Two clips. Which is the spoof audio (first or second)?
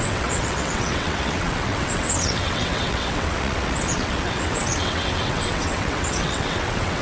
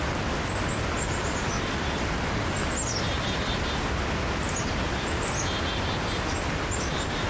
first